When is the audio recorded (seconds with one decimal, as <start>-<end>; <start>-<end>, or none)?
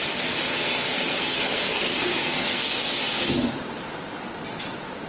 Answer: 0.0-0.5; 3.0-5.1